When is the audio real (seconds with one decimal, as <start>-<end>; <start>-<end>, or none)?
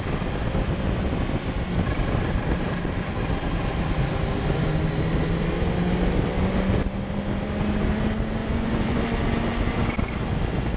0.0-8.4; 9.0-10.8